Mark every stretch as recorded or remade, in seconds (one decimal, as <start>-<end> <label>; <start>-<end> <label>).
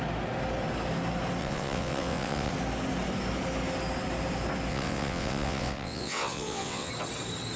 0.0-1.4 recorded; 1.4-2.5 remade; 2.5-4.7 recorded; 4.7-6.9 remade; 6.9-7.6 recorded